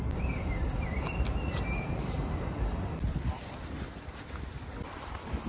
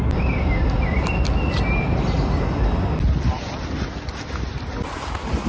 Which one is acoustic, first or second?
second